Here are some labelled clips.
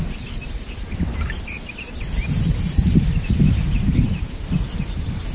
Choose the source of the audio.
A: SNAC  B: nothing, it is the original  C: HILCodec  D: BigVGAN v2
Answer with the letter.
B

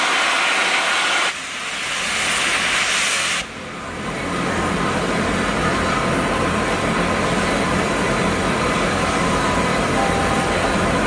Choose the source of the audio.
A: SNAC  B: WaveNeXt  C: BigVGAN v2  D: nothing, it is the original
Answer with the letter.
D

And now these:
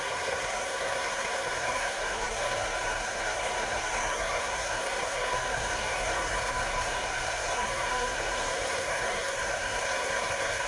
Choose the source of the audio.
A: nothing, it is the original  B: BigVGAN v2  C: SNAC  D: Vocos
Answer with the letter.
C